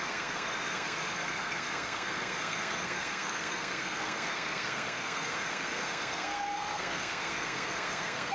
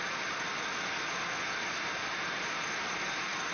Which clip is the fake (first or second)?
first